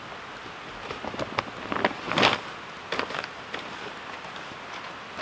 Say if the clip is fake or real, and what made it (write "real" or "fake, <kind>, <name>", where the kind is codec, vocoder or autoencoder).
real